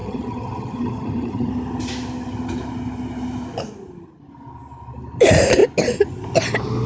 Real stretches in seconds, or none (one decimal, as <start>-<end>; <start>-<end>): 1.5-6.9